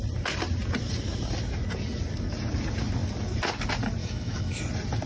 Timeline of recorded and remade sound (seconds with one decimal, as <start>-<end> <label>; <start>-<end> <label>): 0.0-4.0 recorded; 4.0-4.6 remade; 4.6-5.1 recorded